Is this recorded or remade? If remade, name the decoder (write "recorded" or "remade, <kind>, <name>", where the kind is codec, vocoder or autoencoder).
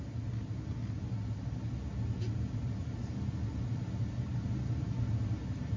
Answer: recorded